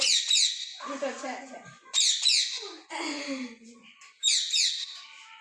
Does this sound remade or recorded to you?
remade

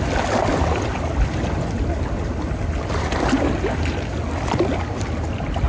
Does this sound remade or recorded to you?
recorded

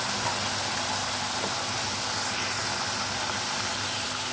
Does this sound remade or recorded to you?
recorded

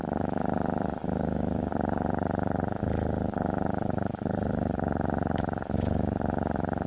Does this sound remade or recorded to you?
remade